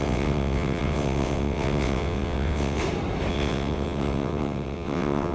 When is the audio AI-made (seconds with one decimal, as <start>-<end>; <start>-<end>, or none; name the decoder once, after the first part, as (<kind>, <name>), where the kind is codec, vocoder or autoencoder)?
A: 0.0-2.8 (vocoder, WaveNeXt); 3.3-5.3